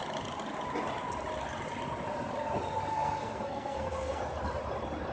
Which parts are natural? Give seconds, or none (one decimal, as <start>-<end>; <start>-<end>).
0.0-2.9; 4.2-5.1